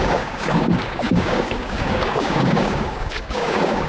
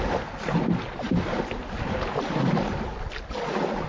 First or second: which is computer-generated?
first